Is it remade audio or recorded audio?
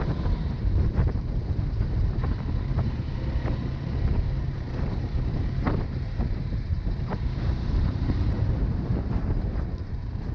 remade